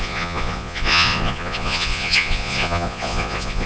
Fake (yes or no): yes